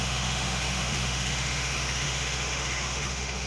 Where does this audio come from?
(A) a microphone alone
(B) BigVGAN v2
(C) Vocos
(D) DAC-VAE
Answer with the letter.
D